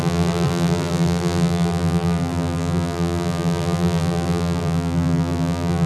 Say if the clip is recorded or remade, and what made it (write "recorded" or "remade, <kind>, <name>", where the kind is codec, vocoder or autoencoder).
remade, vocoder, BigVGAN v2